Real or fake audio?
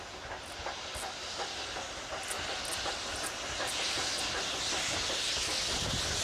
real